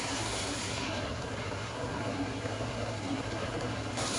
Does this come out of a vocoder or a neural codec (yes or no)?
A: yes